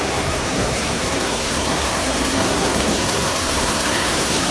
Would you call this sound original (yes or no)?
no